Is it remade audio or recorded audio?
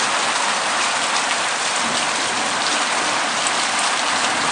remade